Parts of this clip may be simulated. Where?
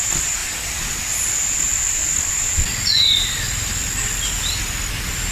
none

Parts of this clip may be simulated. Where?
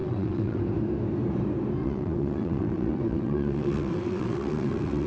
0.0-0.6 (vocoder, WaveNeXt); 1.8-5.1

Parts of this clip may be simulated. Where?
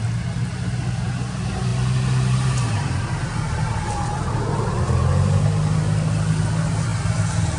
none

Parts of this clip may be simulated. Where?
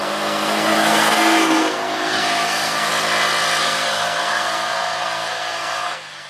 0.0-2.9 (codec, SNAC); 3.6-6.3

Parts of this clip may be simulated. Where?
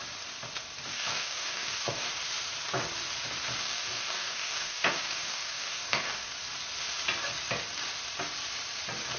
0.9-2.1 (codec, DAC); 3.6-6.3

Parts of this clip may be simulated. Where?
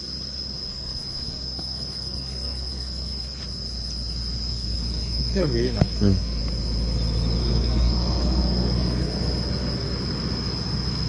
0.7-3.4 (codec, SNAC); 4.5-6.4; 7.4-9.1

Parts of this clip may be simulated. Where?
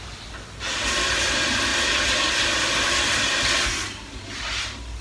none